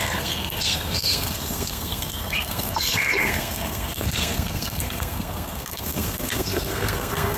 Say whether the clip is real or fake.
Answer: fake